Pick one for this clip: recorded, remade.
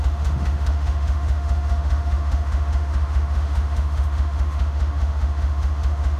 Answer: remade